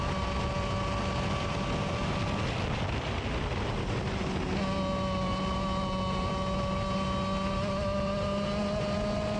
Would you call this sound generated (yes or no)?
no